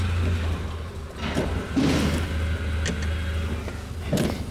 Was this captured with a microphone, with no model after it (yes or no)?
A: yes